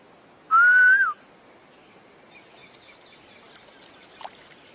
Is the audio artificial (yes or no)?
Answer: no